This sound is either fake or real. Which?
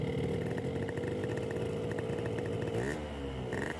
real